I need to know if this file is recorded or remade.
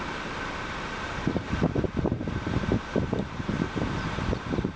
remade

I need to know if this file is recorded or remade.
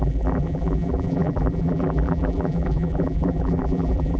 remade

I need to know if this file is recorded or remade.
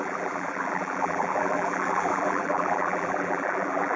remade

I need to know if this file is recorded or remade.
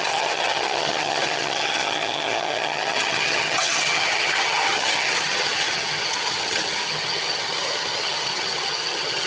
remade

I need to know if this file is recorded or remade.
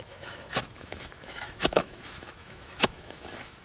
remade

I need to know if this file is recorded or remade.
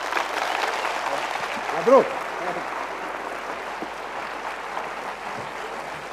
recorded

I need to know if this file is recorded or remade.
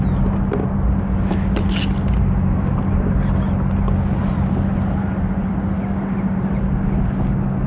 recorded